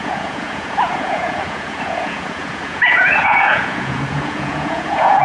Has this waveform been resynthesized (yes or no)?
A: yes